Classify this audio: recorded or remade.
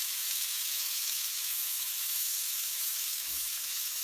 remade